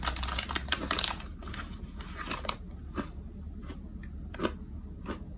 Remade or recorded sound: recorded